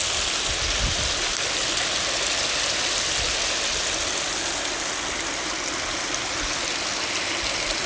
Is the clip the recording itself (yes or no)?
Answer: yes